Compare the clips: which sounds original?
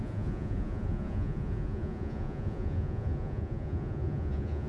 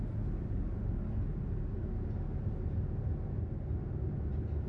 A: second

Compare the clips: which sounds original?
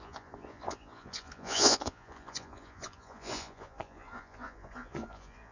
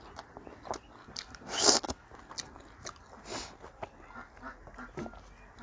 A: second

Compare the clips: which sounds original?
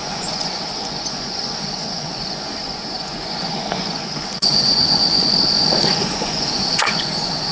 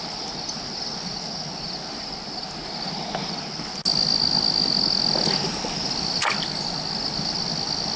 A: second